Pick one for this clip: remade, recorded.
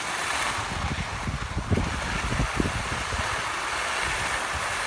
recorded